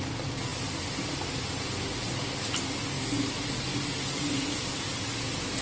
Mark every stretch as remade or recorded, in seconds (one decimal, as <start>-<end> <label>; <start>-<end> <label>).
0.0-5.6 recorded